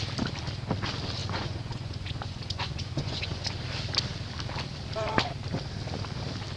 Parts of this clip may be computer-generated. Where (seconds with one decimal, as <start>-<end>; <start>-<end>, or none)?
1.2-3.5